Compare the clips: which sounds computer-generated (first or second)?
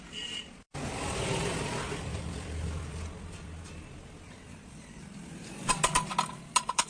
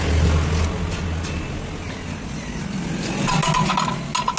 first